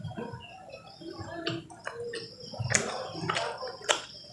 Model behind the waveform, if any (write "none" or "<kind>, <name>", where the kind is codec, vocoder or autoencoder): none